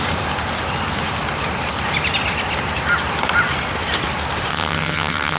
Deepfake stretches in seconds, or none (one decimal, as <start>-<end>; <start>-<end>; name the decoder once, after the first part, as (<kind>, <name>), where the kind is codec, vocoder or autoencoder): 4.5-5.4 (vocoder, HiFi-GAN)